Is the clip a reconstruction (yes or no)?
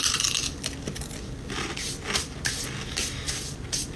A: no